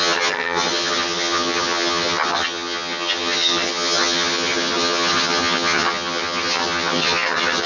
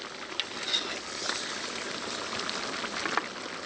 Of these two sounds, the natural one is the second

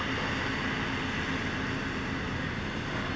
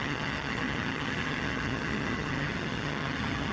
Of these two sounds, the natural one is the first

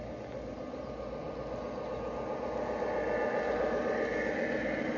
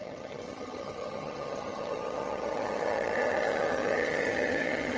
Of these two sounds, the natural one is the first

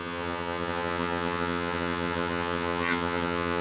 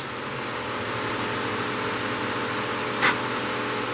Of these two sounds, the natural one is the second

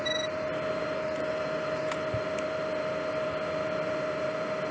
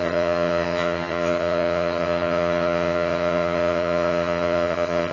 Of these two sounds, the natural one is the first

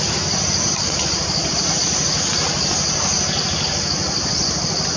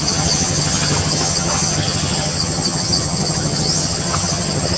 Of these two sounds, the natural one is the first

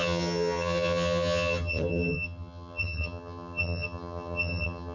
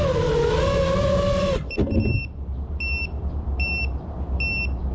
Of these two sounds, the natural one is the second